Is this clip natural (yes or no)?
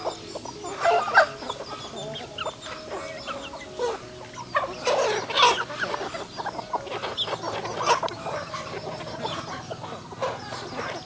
yes